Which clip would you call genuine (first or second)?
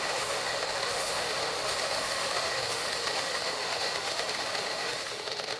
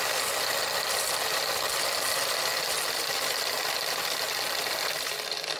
second